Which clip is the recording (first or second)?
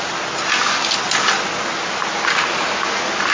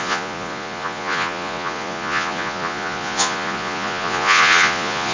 first